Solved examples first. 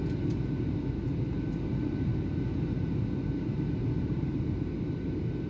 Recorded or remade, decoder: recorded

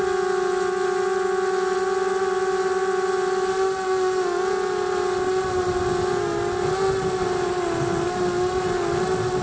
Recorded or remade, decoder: recorded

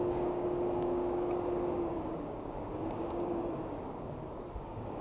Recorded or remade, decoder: remade, codec, DAC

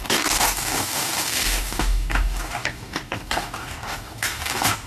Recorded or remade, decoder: remade, codec, DAC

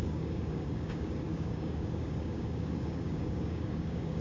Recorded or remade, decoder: remade, codec, DAC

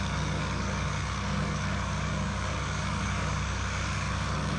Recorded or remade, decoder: remade, codec, DAC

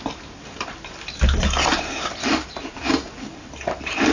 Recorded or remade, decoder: recorded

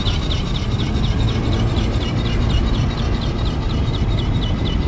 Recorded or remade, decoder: recorded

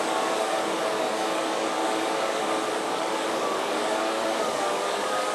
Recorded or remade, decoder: remade, codec, DAC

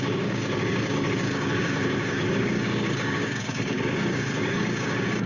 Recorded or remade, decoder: remade, codec, DAC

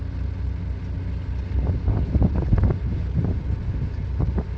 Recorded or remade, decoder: recorded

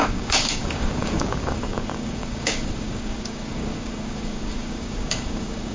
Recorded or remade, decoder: remade, codec, DAC